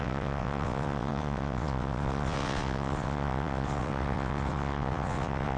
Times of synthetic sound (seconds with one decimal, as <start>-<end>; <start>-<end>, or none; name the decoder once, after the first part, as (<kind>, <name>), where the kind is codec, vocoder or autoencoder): 0.0-5.6 (vocoder, WaveNeXt)